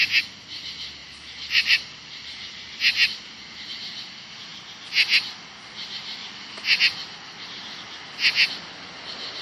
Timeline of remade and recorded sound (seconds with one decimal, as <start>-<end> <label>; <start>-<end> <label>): 0.0-1.0 recorded; 1.0-2.8 remade; 2.8-6.2 recorded; 6.2-6.8 remade; 6.8-9.4 recorded